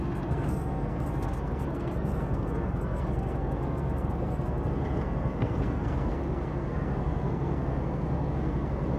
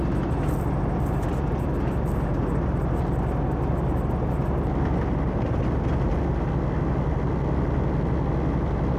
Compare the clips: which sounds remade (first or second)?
first